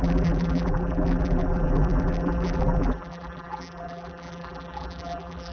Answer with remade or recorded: remade